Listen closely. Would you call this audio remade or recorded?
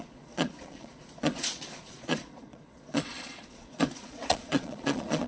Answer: remade